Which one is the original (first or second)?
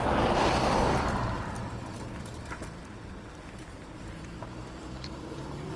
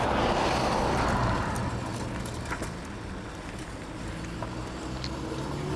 second